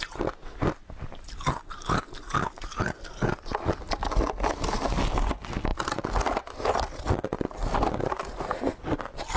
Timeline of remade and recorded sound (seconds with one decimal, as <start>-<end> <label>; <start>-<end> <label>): 0.0-9.4 recorded